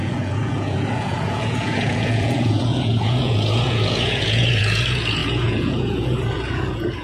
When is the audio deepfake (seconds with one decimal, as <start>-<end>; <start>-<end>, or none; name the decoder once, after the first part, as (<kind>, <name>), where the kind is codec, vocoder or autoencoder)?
0.0-7.0 (vocoder, Vocos)